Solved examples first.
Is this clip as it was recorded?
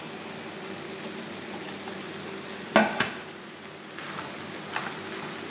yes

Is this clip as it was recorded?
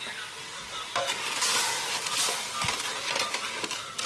yes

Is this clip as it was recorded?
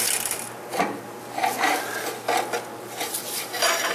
yes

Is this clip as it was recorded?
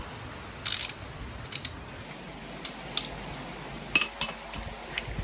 yes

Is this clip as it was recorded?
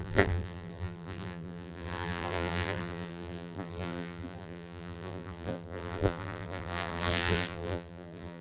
no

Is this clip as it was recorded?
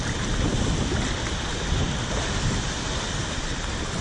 yes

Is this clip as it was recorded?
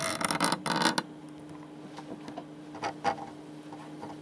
yes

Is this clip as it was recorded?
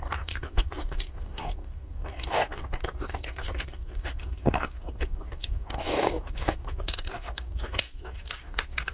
no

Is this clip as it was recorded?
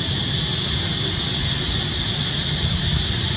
yes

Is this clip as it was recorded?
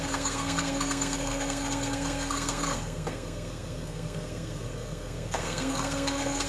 no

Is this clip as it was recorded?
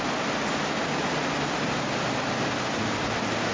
yes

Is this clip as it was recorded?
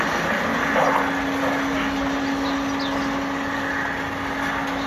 yes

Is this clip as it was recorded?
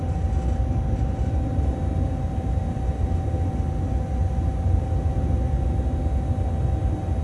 yes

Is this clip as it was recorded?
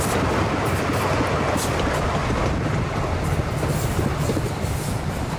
yes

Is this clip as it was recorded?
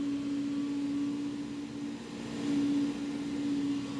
yes